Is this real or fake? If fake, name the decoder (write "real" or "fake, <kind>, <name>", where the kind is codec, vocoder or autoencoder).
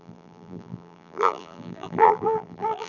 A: fake, vocoder, BigVGAN v2